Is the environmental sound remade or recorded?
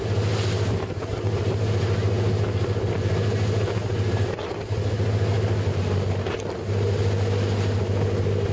recorded